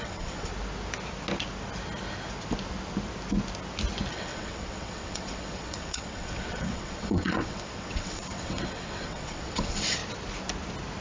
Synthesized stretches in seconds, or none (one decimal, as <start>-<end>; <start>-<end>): 0.0-0.5; 4.1-10.0